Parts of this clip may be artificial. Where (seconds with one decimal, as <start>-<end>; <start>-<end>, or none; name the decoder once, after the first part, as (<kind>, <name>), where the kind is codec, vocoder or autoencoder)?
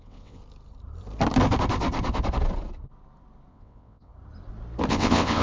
0.0-0.4 (vocoder, WaveNeXt); 3.5-4.1; 4.9-5.4